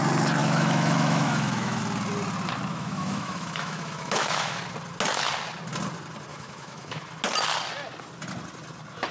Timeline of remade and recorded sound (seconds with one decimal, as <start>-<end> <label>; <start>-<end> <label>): 0.0-0.4 recorded; 0.4-1.8 remade; 1.8-2.7 recorded; 2.7-4.6 remade; 4.6-6.3 recorded; 6.3-7.0 remade; 7.0-9.1 recorded